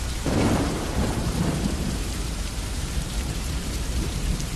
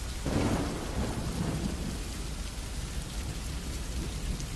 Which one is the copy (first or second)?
first